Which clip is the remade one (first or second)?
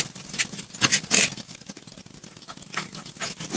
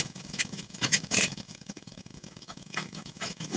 second